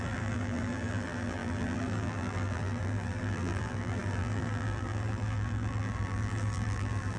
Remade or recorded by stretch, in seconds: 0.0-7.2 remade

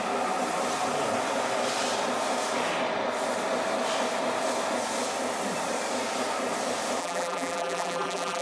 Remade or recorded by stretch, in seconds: 0.0-7.0 recorded; 7.0-8.4 remade

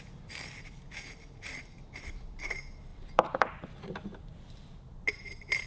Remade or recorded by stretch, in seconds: 0.0-5.7 remade